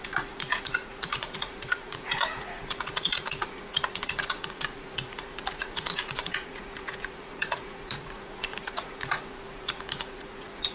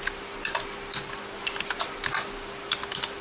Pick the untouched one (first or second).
second